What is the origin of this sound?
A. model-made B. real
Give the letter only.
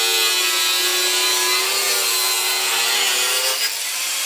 B